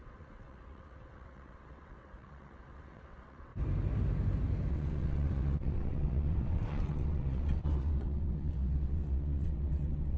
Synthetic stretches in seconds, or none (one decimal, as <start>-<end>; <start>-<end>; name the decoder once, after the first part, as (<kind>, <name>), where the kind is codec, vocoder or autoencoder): 0.0-3.5 (vocoder, WaveNeXt); 4.7-10.2